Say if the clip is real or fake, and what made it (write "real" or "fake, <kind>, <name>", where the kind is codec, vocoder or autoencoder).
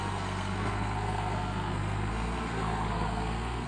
fake, codec, SNAC